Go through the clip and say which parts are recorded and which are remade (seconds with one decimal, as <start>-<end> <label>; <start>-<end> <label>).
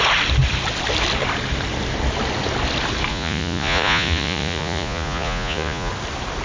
0.0-3.1 recorded; 3.1-5.9 remade; 5.9-6.4 recorded